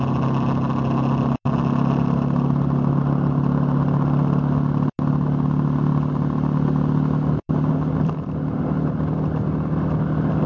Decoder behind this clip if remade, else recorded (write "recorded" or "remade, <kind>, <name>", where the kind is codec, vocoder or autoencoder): recorded